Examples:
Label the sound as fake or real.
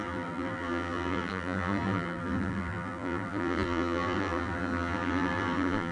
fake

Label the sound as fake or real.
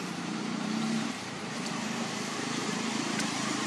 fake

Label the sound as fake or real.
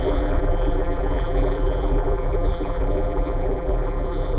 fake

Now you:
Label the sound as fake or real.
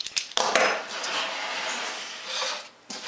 real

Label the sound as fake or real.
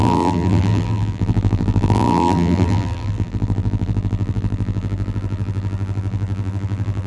fake